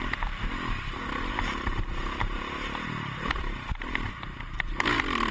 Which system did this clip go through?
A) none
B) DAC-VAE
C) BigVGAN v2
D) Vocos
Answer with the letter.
C